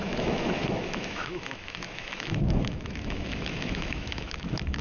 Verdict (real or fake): fake